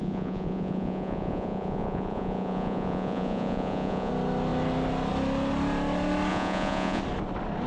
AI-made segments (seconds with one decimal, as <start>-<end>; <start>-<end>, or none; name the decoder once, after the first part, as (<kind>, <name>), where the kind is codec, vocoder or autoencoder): 0.0-4.1 (vocoder, Vocos); 6.3-7.0